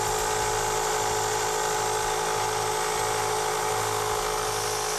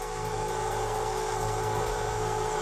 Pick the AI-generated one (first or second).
second